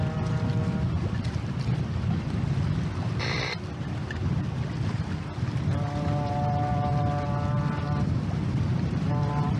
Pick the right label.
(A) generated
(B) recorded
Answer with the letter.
B